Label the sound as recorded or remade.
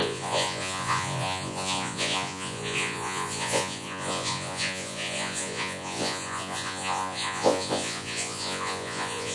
remade